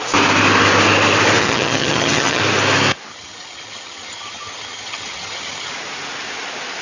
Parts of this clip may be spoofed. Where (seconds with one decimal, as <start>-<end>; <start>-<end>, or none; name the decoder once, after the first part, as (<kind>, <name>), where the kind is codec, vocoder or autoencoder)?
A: 1.4-2.4 (vocoder, HiFi-GAN); 3.1-5.7